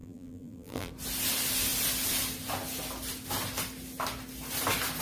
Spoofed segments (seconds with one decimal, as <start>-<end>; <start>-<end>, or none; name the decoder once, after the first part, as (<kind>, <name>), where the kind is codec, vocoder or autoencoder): 0.0-0.9 (vocoder, BigVGAN v2)